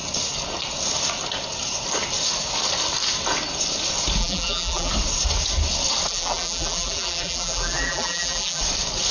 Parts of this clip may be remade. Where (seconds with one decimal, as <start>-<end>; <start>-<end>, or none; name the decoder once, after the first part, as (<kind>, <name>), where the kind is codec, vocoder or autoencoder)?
4.2-4.9 (vocoder, BigVGAN v2); 6.1-8.6